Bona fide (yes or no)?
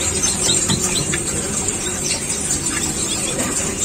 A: no